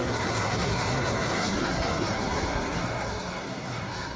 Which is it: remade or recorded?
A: remade